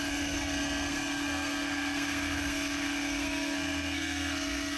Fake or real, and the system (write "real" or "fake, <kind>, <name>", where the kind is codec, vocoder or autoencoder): fake, codec, SNAC